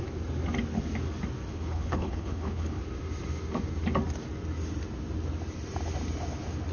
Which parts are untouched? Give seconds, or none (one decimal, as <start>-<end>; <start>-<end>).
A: 0.0-1.5; 2.8-6.7